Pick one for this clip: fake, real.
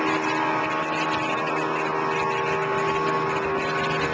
real